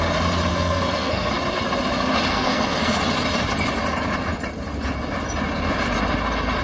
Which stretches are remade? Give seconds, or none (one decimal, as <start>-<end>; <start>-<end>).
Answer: 0.5-1.3; 2.3-3.0